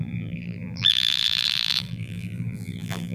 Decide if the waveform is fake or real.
fake